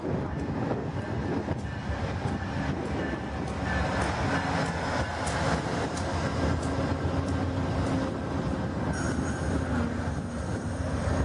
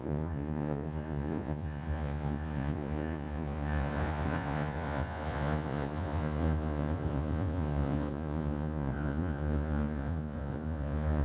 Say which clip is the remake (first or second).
second